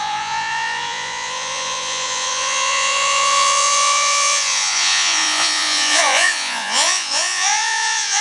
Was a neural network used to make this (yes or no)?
yes